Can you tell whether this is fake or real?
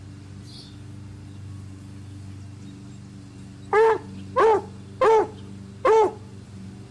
real